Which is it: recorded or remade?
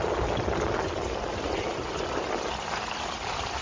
recorded